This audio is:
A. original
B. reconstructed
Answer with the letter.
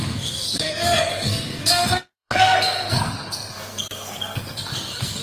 B